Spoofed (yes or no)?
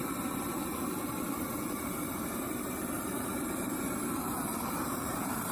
yes